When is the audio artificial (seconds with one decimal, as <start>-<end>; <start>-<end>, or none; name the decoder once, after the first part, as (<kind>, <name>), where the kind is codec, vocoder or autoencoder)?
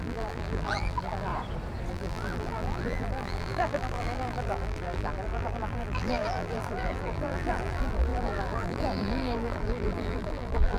0.0-1.3 (vocoder, BigVGAN v2); 1.9-10.8